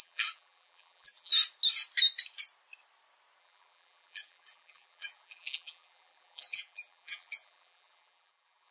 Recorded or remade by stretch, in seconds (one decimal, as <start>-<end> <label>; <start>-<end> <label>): 0.0-1.3 remade; 1.3-3.4 recorded; 3.4-8.7 remade